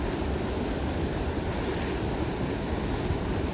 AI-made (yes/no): no